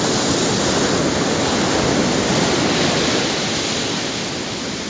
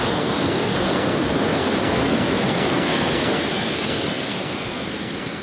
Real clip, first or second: first